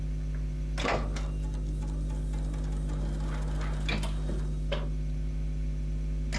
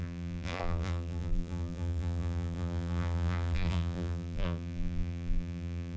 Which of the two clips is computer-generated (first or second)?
second